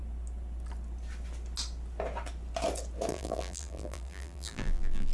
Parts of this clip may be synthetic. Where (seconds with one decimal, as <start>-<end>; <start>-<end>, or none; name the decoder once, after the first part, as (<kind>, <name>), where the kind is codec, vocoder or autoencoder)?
3.1-5.1 (vocoder, BigVGAN v2)